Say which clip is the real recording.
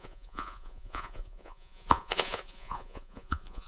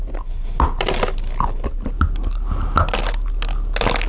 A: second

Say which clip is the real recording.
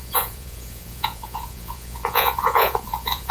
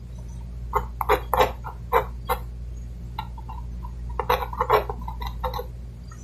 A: second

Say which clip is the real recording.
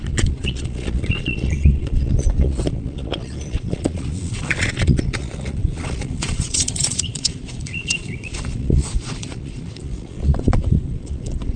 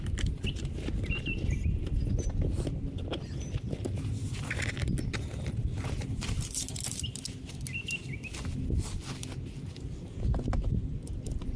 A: second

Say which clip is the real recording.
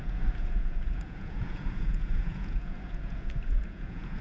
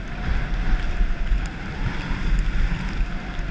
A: second